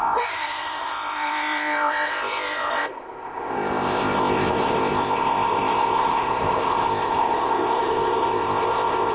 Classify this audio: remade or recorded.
remade